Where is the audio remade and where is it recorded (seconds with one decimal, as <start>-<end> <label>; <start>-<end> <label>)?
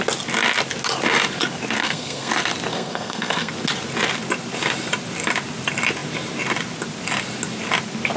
0.0-1.8 recorded; 1.8-2.3 remade; 2.3-2.7 recorded; 2.7-3.5 remade; 3.5-8.2 recorded